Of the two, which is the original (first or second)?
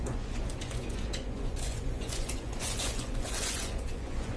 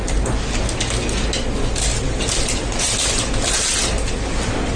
second